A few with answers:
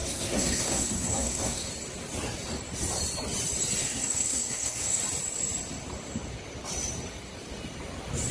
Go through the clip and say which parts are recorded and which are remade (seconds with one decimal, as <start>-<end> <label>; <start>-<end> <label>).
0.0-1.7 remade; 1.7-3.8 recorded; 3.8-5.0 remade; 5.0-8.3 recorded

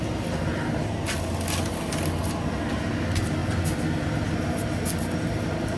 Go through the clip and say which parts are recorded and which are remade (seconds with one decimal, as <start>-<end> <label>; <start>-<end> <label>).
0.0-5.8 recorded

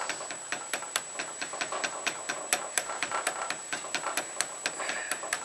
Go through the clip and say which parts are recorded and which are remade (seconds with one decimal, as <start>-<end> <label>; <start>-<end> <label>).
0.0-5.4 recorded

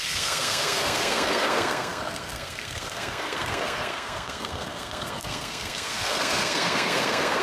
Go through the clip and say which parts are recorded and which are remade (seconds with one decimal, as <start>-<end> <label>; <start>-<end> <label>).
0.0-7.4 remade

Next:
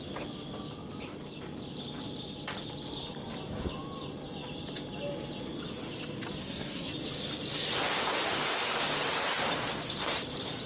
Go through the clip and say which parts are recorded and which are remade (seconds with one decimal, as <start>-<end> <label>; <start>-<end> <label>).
0.0-6.4 recorded; 6.4-6.9 remade; 6.9-10.7 recorded

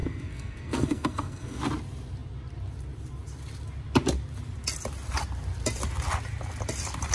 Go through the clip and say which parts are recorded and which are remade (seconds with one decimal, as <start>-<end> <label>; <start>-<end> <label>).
0.0-1.6 remade; 1.6-7.1 recorded

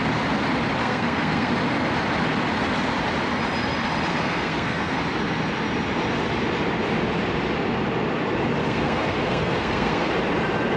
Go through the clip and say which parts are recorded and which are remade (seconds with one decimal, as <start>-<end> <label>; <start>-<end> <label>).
0.0-0.8 recorded; 0.8-1.5 remade; 1.5-4.1 recorded; 4.1-5.0 remade; 5.0-8.6 recorded; 8.6-10.1 remade; 10.1-10.8 recorded

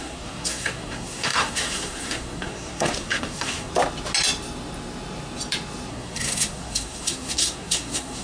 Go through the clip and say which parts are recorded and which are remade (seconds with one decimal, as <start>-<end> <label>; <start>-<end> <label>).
0.0-3.7 remade; 3.7-5.9 recorded; 5.9-8.2 remade